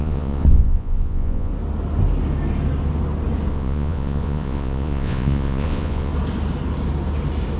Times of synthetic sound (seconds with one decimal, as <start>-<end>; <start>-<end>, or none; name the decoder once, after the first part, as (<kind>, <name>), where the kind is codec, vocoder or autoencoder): 0.0-1.5 (vocoder, Vocos); 3.5-6.1